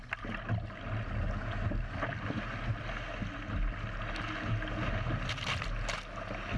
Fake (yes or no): no